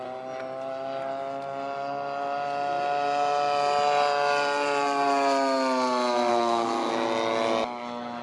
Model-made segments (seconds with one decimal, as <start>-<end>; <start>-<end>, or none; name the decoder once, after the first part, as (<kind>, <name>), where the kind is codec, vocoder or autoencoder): 6.3-6.9 (codec, SNAC)